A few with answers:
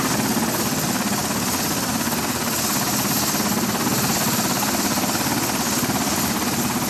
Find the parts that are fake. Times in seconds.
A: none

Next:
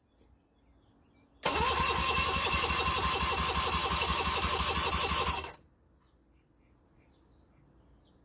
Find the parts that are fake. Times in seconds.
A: 2.0-2.7; 3.8-4.6

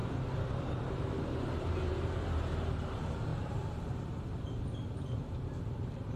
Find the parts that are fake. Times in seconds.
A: 1.6-6.2

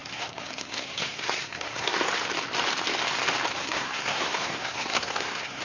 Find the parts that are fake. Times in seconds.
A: 0.0-2.1; 3.6-5.6

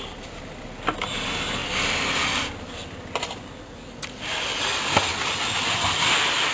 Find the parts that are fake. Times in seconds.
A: none